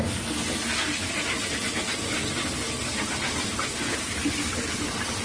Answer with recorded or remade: recorded